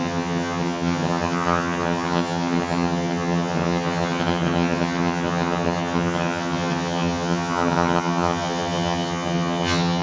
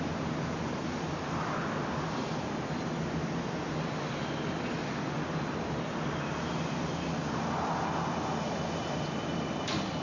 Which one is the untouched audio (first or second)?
second